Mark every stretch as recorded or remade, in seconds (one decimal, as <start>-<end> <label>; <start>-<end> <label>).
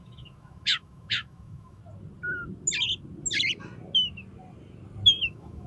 0.0-1.8 remade; 1.8-5.2 recorded; 5.2-5.7 remade